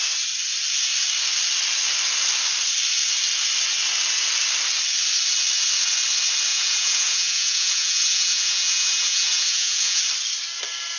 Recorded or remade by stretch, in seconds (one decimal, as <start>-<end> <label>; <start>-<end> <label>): 0.0-6.5 recorded; 6.5-10.1 remade; 10.1-11.0 recorded